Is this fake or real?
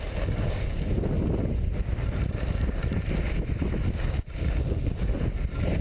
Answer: real